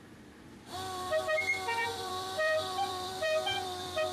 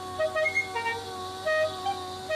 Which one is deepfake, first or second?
first